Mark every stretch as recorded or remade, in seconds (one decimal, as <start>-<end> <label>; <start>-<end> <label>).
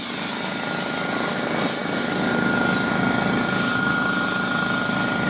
0.0-5.3 recorded